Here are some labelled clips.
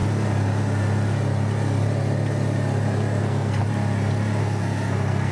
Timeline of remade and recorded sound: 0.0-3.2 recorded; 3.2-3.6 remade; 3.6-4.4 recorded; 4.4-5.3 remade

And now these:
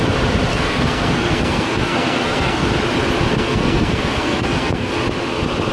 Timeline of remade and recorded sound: 0.0-0.5 recorded; 0.5-2.7 remade; 2.7-3.3 recorded; 3.3-4.9 remade; 4.9-5.7 recorded

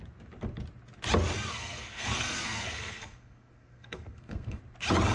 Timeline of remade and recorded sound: 0.0-1.5 recorded; 1.5-4.6 remade; 4.6-5.1 recorded

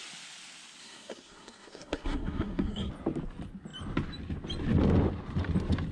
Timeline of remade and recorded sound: 0.0-0.8 recorded; 0.8-2.9 remade; 2.9-5.9 recorded

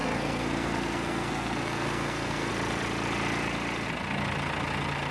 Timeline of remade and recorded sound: 0.0-2.5 remade; 2.5-5.1 recorded

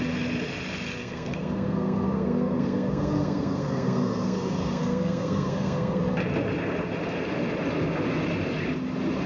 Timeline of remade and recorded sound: 0.0-1.0 recorded; 1.0-6.0 remade; 6.0-9.3 recorded

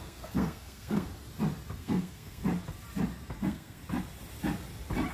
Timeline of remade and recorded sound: 0.0-1.1 remade; 1.1-1.8 recorded; 1.8-2.4 remade; 2.4-3.4 recorded; 3.4-3.8 remade; 3.8-5.1 recorded

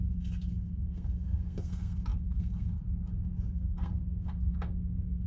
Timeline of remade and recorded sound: 0.0-5.3 remade